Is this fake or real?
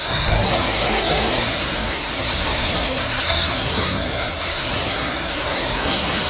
fake